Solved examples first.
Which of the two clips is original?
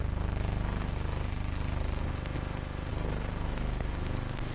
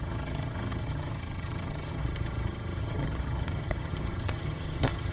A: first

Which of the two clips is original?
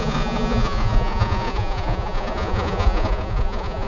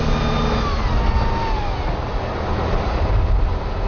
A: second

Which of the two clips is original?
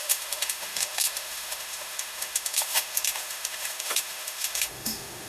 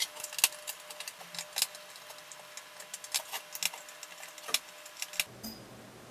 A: second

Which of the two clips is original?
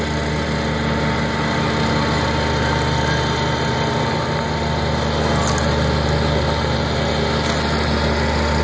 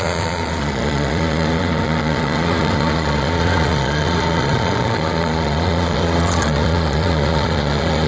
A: first